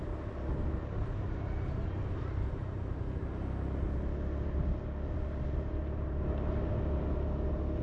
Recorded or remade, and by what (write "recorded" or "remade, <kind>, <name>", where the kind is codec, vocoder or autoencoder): recorded